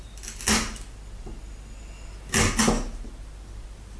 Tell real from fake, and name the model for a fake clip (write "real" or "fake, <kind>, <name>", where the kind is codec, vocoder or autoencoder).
real